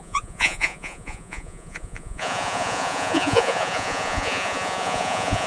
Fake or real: fake